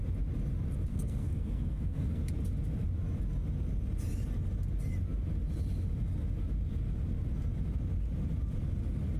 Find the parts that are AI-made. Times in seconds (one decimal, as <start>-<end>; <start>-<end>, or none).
0.9-2.2